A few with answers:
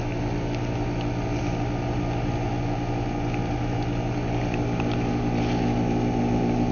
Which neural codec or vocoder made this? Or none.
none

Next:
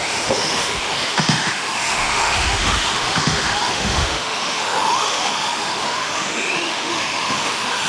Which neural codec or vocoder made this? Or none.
autoencoder, DAC-VAE